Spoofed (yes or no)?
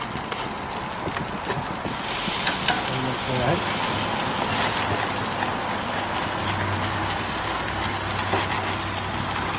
no